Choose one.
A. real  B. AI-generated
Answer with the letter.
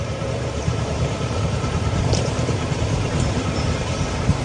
B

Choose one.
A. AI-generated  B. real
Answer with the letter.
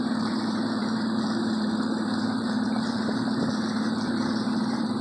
A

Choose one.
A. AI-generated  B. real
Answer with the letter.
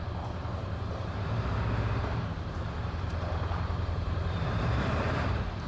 A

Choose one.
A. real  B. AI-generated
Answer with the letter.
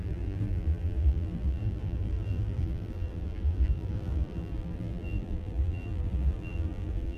B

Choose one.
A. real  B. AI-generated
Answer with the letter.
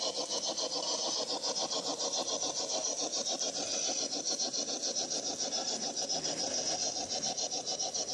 A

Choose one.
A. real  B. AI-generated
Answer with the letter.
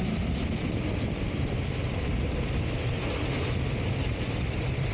A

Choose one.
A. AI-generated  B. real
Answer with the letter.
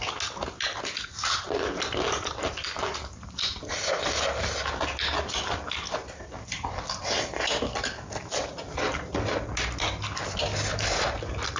B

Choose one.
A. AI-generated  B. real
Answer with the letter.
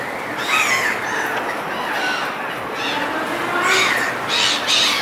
B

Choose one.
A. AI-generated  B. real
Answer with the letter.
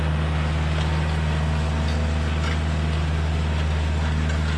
B